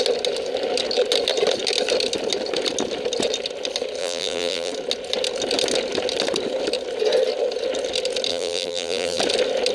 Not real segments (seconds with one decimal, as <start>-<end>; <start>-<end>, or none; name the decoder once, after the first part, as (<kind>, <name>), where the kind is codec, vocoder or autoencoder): 4.0-4.7 (vocoder, BigVGAN v2); 8.3-9.2